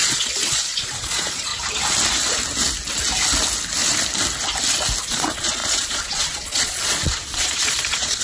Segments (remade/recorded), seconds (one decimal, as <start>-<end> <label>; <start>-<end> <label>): 0.0-1.5 remade; 1.5-5.0 recorded; 5.0-8.2 remade

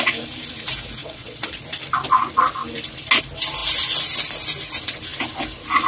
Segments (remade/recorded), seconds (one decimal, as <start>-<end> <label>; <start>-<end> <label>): 0.0-1.0 recorded; 1.0-1.6 remade; 1.6-5.9 recorded

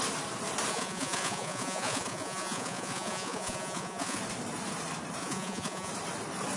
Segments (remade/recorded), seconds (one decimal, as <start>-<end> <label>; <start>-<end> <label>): 0.0-0.7 recorded; 0.7-4.2 remade; 4.2-5.2 recorded; 5.2-5.9 remade; 5.9-6.6 recorded

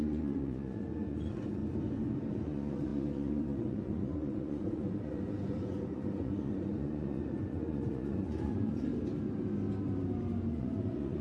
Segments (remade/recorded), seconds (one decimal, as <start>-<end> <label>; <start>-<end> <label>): 0.0-1.6 remade; 1.6-2.3 recorded; 2.3-8.9 remade; 8.9-10.5 recorded; 10.5-11.2 remade